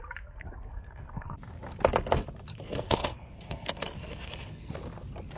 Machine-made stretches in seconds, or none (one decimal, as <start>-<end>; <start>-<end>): 0.7-1.4; 2.5-4.7